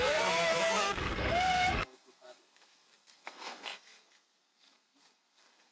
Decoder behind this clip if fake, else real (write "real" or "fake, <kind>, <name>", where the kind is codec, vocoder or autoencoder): fake, codec, SNAC